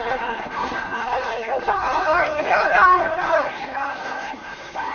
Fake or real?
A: fake